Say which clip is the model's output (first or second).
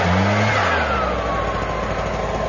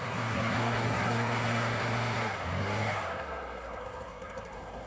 second